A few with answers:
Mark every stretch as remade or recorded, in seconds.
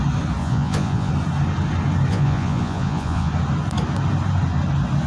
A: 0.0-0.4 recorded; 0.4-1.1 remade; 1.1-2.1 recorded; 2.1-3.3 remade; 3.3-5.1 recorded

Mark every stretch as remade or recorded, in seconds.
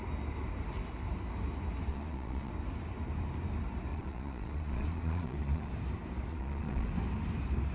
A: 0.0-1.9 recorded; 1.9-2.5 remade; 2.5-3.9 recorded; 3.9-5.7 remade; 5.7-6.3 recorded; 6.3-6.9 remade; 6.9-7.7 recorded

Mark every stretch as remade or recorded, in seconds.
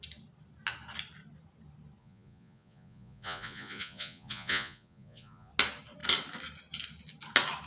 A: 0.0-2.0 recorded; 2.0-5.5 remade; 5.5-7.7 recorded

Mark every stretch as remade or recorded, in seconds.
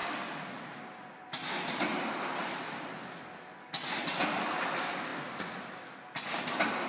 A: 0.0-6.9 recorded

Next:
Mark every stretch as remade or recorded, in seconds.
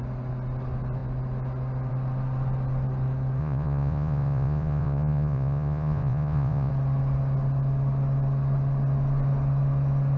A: 0.0-3.4 recorded; 3.4-6.7 remade; 6.7-10.2 recorded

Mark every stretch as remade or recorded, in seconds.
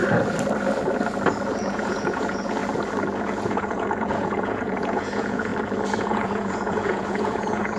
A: 0.0-1.5 recorded; 1.5-2.6 remade; 2.6-3.2 recorded; 3.2-5.5 remade; 5.5-6.0 recorded; 6.0-7.8 remade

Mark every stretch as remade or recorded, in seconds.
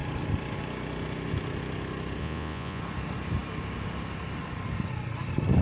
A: 0.0-2.2 recorded; 2.2-2.8 remade; 2.8-5.6 recorded